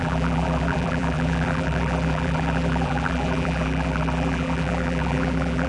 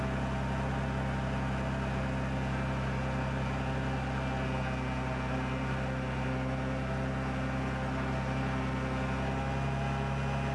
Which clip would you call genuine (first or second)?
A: second